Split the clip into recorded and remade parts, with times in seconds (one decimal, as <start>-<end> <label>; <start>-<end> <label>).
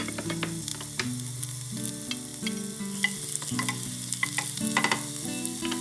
0.0-5.8 recorded